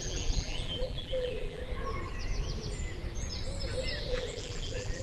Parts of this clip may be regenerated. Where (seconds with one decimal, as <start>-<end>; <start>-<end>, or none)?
0.0-1.6; 4.1-5.0